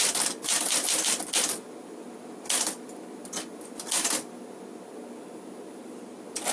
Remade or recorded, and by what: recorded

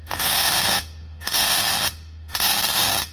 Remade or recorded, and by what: remade, autoencoder, DAC-VAE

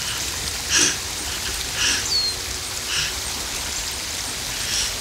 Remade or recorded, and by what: recorded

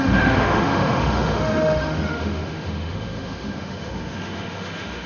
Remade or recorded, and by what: remade, autoencoder, DAC-VAE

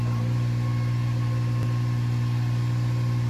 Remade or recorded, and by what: recorded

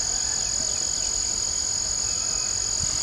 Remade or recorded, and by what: recorded